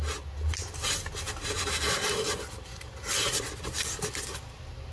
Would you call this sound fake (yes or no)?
no